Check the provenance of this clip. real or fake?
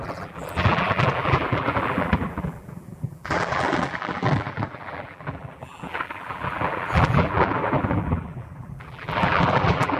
fake